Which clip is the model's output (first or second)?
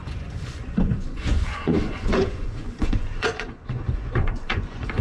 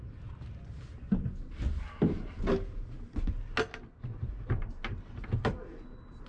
first